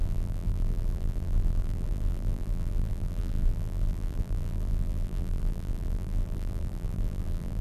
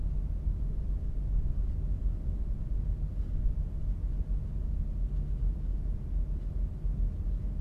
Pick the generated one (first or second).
first